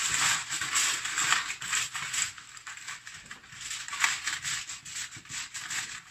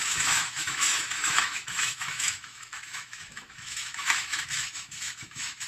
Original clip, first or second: first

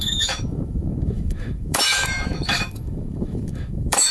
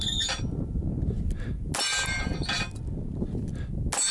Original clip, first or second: second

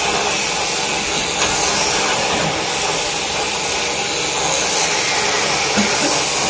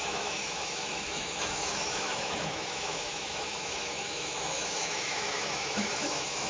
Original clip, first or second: first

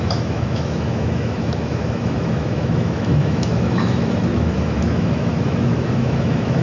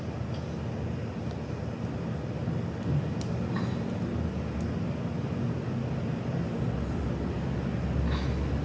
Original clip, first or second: second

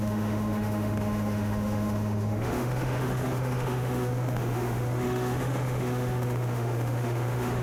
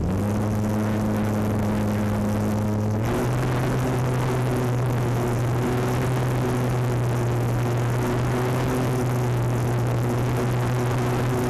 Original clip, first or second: second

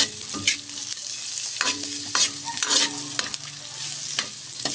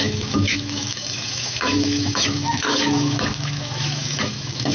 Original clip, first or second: first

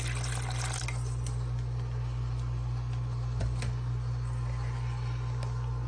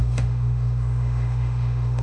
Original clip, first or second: first